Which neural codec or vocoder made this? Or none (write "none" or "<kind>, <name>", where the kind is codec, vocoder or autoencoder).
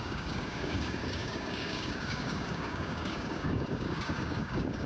codec, DAC